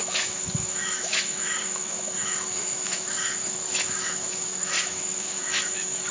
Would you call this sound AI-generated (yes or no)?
yes